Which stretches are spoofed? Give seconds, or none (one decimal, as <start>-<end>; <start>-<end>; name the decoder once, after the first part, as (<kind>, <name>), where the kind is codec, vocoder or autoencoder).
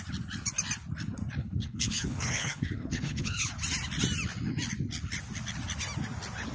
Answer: 1.4-3.5 (codec, HILCodec)